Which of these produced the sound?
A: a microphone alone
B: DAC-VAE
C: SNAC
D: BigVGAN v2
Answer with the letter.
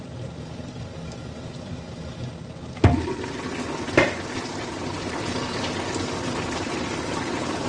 A